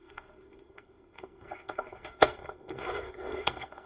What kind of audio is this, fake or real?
fake